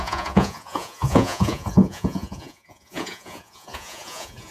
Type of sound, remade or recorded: remade